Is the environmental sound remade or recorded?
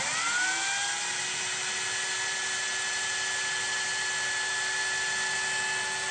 recorded